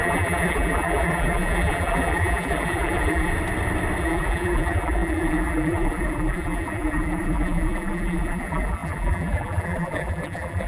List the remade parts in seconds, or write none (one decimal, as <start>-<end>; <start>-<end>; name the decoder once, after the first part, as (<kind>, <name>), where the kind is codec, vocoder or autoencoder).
0.0-3.3 (vocoder, BigVGAN v2); 4.0-10.7